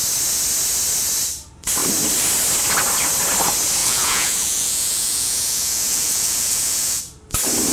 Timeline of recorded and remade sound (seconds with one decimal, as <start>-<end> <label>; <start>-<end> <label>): 0.0-3.8 recorded; 3.8-7.0 remade; 7.0-7.7 recorded